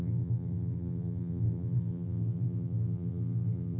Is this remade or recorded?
remade